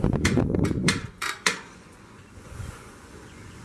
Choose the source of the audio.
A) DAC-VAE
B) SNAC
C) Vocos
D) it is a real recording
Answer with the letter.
C